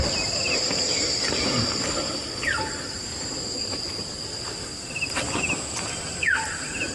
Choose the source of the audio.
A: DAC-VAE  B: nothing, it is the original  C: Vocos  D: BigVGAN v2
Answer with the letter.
D